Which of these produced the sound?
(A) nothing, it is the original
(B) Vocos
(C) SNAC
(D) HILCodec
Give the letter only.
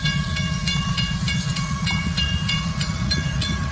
B